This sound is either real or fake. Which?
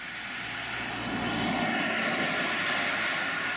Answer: real